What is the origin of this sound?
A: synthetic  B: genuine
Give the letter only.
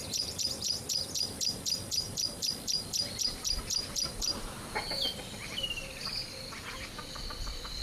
A